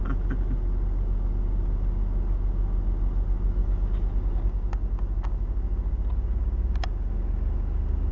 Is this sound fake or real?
real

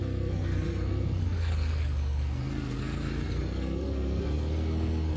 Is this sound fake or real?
fake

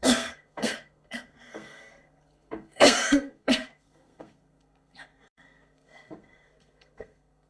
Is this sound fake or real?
fake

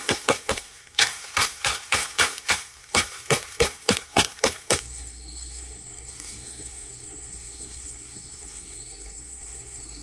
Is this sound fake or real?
fake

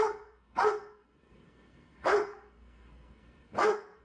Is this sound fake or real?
fake